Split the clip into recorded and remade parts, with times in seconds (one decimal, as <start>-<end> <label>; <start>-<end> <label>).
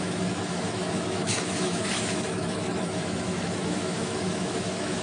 0.0-5.0 remade